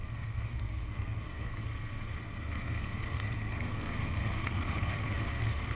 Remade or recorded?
remade